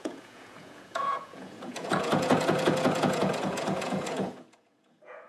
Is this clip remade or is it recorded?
remade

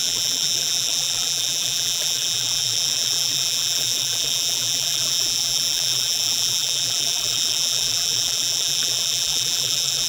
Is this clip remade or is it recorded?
remade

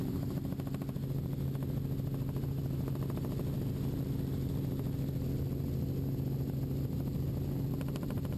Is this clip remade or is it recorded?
recorded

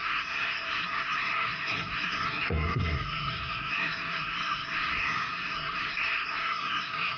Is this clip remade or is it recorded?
remade